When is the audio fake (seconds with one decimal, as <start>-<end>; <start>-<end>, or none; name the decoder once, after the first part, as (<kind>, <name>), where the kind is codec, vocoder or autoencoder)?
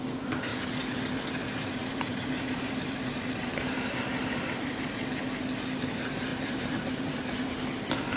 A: 1.8-4.9 (vocoder, BigVGAN v2); 6.3-8.2